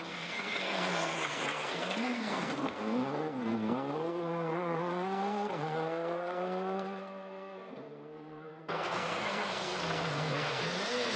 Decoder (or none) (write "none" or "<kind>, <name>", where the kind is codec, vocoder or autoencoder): codec, SNAC